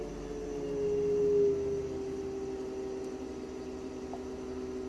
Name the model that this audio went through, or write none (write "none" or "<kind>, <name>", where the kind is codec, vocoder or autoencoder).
none